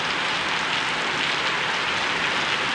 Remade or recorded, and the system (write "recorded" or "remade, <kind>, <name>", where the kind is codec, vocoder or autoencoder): recorded